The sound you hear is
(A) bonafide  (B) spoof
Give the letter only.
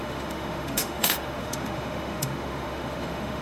B